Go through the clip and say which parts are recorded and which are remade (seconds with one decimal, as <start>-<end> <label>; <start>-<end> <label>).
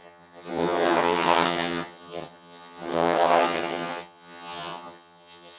0.0-5.6 remade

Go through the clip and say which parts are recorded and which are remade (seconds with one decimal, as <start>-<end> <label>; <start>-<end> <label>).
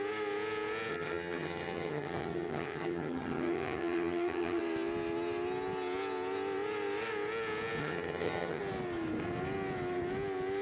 0.0-0.9 recorded; 0.9-4.6 remade; 4.6-7.8 recorded; 7.8-8.6 remade; 8.6-10.6 recorded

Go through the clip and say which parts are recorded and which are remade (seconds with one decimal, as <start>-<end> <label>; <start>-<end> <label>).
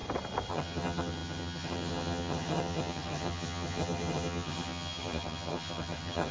0.0-0.5 recorded; 0.5-6.3 remade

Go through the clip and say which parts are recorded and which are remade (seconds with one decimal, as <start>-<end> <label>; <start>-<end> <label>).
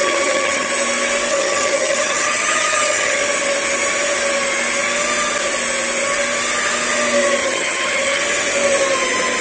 0.0-0.7 remade; 0.7-1.3 recorded; 1.3-3.2 remade; 3.2-7.4 recorded; 7.4-8.2 remade; 8.2-9.4 recorded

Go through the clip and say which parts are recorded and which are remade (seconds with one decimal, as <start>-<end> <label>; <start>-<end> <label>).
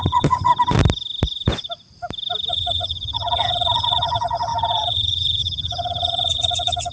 0.0-0.5 remade; 0.5-2.5 recorded; 2.5-6.9 remade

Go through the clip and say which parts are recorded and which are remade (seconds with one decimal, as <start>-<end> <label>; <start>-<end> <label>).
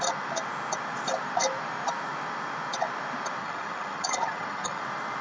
0.0-3.4 recorded; 3.4-4.8 remade; 4.8-5.2 recorded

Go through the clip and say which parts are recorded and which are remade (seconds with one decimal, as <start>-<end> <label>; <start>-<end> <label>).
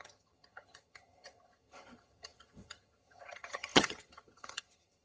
0.0-5.0 remade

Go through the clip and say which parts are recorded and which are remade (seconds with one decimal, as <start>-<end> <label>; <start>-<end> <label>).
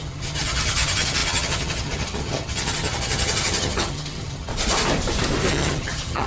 0.0-4.5 remade; 4.5-5.5 recorded; 5.5-6.3 remade